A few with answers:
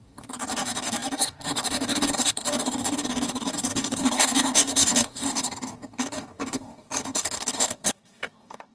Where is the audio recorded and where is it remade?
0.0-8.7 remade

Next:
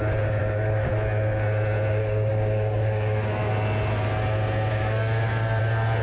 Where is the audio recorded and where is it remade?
0.0-0.4 recorded; 0.4-0.9 remade; 0.9-1.9 recorded; 1.9-3.5 remade; 3.5-4.7 recorded; 4.7-5.6 remade; 5.6-6.0 recorded

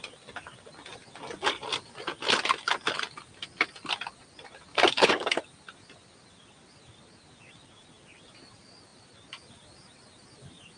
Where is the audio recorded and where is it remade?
0.0-4.7 recorded; 4.7-5.4 remade; 5.4-10.8 recorded

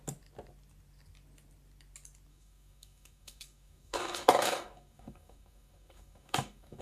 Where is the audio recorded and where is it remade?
0.0-2.3 recorded; 2.3-6.8 remade